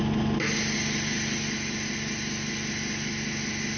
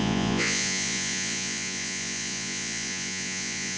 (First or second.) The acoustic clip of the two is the first